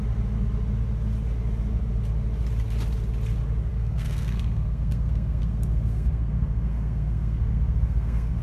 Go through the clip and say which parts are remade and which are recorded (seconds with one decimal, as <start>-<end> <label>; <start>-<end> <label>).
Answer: 0.0-3.7 recorded; 3.7-8.4 remade